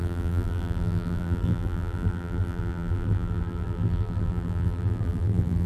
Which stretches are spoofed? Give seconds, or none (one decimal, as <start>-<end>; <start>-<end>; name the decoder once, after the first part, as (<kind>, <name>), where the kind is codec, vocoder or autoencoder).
0.0-5.7 (vocoder, BigVGAN v2)